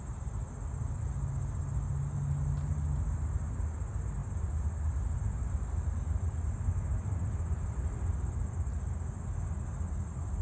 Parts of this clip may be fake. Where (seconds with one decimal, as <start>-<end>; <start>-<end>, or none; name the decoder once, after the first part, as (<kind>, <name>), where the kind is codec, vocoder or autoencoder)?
none